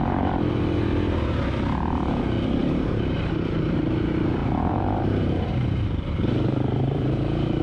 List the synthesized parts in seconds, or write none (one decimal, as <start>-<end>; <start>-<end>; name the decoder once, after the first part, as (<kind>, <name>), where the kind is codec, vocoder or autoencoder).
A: 2.6-3.8 (vocoder, BigVGAN v2); 4.4-7.6